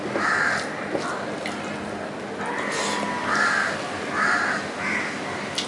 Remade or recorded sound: recorded